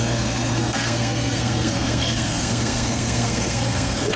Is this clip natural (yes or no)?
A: no